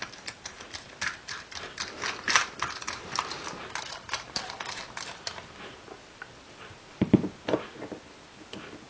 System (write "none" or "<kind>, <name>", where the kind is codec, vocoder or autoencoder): none